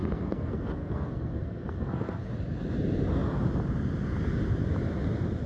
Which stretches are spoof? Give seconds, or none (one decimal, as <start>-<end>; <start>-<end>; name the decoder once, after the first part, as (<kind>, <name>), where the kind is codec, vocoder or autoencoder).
0.0-2.3 (codec, SNAC)

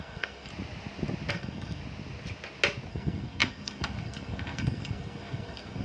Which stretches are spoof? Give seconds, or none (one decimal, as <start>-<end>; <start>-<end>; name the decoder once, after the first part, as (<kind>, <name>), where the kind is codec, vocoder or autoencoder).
0.0-0.5 (codec, SNAC); 1.3-1.8; 2.9-5.8

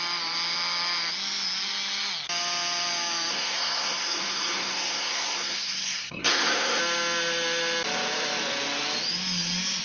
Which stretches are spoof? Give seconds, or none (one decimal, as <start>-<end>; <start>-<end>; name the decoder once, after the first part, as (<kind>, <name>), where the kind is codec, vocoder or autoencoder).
3.3-6.8 (codec, SNAC)

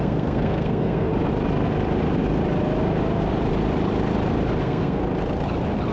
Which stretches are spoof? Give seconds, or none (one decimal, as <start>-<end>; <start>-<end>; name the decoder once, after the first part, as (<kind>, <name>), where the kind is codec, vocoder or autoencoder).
0.0-1.1 (codec, SNAC); 4.6-5.0

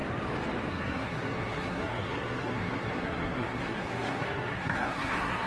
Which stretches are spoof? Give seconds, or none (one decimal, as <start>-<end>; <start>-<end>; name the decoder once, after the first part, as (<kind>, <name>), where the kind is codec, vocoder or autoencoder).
0.7-5.5 (codec, SNAC)

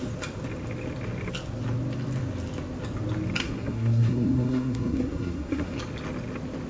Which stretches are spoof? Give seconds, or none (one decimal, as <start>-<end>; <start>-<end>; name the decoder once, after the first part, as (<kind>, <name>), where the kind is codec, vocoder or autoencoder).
3.4-5.8 (codec, SNAC)

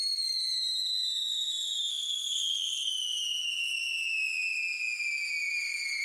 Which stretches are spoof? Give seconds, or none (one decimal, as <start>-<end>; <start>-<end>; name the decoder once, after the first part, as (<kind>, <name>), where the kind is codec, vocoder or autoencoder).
1.9-2.9 (codec, SNAC)

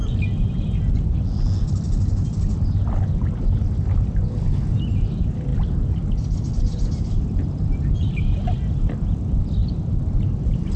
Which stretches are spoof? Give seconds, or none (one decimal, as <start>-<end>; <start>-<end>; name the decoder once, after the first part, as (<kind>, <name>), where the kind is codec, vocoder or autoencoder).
none